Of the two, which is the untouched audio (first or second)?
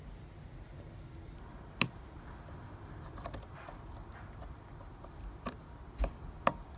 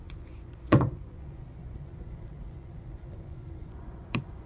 first